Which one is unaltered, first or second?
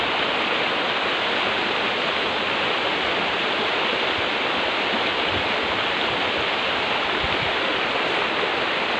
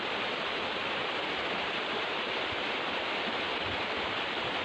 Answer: first